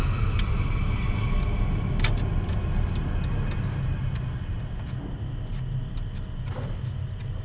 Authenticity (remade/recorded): recorded